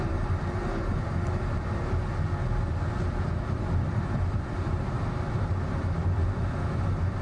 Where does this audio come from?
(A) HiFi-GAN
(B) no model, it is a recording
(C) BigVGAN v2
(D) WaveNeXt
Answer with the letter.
C